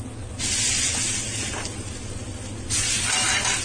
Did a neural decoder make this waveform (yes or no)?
no